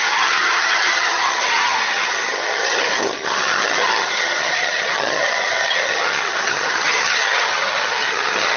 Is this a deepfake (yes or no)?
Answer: yes